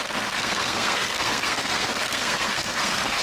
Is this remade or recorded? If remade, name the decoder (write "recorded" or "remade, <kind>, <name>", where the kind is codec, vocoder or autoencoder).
remade, codec, SNAC